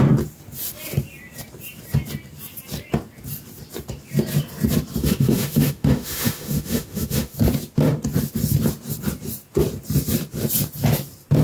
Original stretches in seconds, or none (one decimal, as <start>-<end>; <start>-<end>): 0.0-5.0; 7.4-11.4